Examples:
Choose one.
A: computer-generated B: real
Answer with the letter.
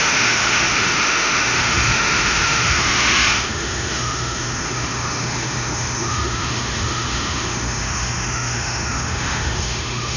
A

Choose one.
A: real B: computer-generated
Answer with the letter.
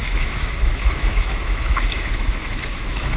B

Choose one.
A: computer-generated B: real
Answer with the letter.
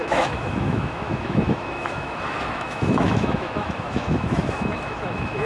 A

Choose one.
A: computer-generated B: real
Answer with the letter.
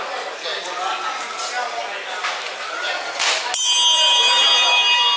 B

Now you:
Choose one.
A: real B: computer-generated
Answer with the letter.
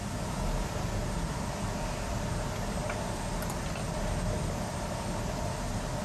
A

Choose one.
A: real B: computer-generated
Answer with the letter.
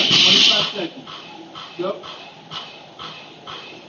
A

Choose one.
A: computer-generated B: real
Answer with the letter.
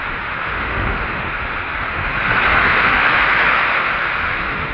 A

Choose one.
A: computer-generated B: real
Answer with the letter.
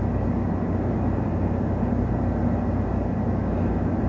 B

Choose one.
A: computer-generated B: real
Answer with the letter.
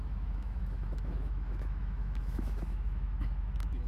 A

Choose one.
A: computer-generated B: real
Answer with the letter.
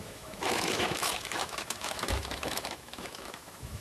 A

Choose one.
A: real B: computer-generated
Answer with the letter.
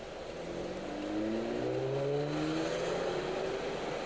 A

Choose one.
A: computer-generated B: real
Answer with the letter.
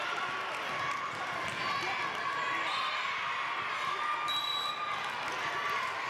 B